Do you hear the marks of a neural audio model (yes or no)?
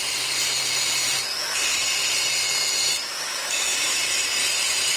yes